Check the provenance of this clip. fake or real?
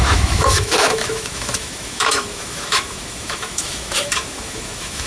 fake